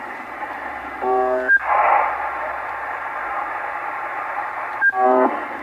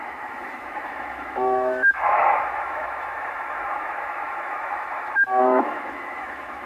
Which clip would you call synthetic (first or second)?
second